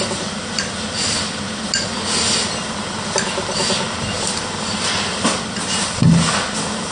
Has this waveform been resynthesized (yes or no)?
no